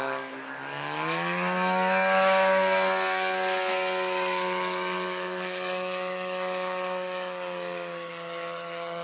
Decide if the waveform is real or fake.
fake